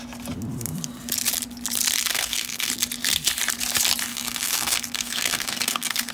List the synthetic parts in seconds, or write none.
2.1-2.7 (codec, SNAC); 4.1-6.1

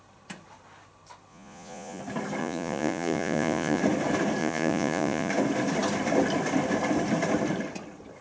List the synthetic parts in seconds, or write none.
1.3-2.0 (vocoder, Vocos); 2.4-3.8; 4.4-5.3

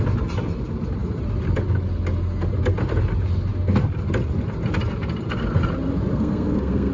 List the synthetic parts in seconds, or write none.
6.1-6.9 (codec, SNAC)